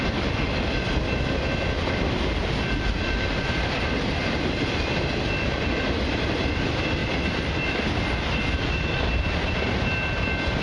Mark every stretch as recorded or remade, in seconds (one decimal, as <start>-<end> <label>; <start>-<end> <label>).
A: 0.0-10.6 recorded